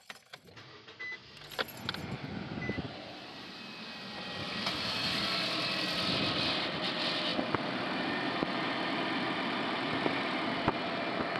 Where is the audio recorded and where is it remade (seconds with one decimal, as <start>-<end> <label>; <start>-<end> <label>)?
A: 0.0-11.4 recorded